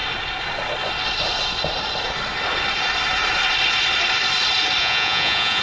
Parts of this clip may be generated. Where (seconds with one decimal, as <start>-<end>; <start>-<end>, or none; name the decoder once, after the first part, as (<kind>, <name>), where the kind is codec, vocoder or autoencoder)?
4.8-5.6 (vocoder, Vocos)